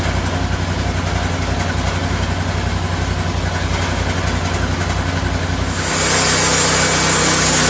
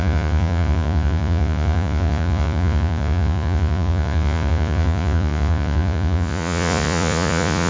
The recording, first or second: first